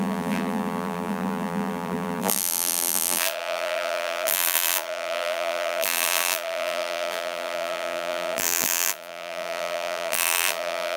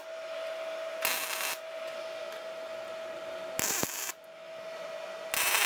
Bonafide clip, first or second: second